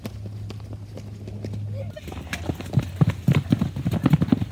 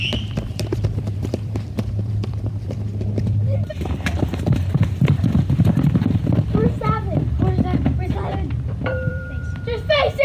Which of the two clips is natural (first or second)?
first